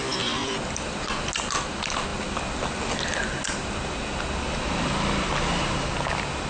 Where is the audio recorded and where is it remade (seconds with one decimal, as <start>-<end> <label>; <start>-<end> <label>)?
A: 0.0-6.5 recorded